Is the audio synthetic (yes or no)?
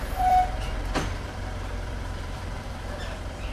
yes